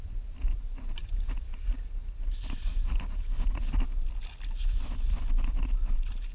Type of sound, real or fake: real